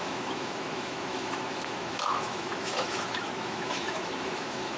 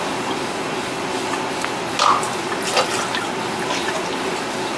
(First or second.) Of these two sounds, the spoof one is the first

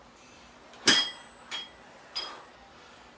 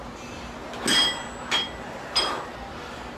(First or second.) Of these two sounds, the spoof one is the first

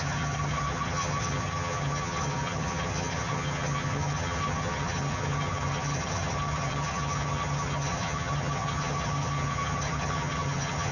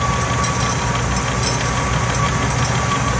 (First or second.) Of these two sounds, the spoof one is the first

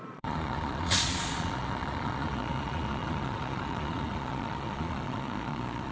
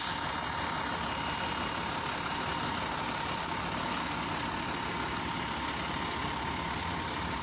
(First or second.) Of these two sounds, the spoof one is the first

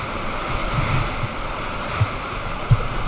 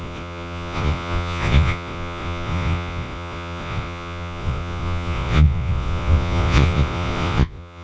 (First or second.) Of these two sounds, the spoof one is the second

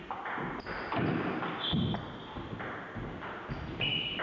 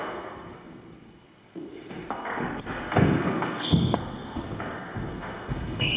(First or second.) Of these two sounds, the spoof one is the second